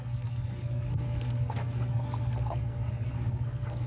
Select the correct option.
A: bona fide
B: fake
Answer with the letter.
B